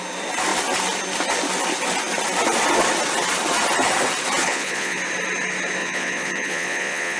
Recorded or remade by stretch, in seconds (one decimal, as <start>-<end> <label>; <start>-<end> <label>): 0.0-4.4 recorded; 4.4-5.0 remade; 5.0-5.8 recorded; 5.8-7.2 remade